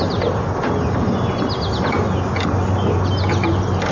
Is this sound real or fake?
real